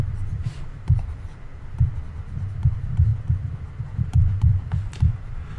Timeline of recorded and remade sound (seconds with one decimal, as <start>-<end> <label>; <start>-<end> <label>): 0.0-1.3 remade; 1.3-2.1 recorded; 2.1-3.1 remade; 3.1-3.8 recorded; 3.8-5.6 remade